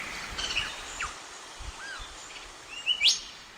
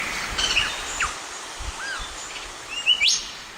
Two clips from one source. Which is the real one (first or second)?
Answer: second